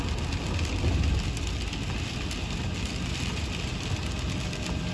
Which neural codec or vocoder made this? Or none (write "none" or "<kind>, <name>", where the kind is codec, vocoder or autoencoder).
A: none